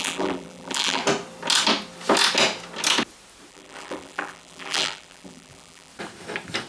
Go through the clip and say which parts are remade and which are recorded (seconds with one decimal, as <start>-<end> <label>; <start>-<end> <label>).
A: 0.0-1.0 remade; 1.0-3.5 recorded; 3.5-5.9 remade; 5.9-6.7 recorded